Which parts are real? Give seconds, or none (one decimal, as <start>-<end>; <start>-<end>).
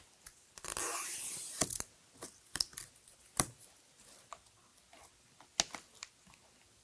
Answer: 0.0-6.8